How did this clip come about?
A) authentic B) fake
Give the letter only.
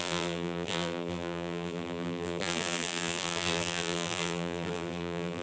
B